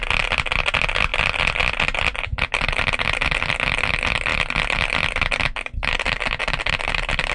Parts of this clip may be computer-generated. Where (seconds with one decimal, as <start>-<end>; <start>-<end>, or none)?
none

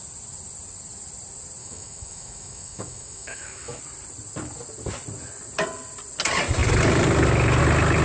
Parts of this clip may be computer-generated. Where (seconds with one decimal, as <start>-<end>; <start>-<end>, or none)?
1.6-3.8

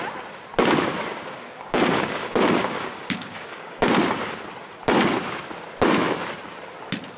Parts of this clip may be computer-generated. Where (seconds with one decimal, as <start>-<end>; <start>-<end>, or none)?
1.1-3.8

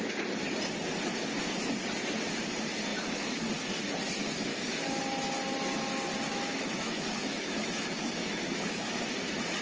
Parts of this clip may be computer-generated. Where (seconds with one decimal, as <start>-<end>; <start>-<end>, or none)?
2.9-3.5; 4.5-5.0; 6.3-9.0

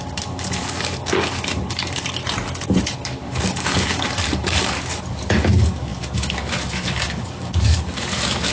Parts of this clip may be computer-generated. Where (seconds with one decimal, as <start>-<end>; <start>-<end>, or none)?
0.0-2.2; 2.8-8.5

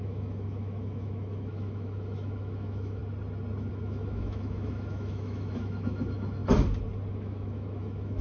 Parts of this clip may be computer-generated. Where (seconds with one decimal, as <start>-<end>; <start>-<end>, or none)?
0.0-3.0; 3.7-6.4; 7.1-8.2

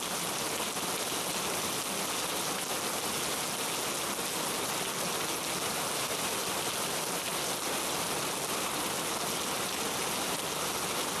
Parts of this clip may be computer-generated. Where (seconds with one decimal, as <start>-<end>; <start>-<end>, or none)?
none